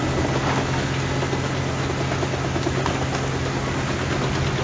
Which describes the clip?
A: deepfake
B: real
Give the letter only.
B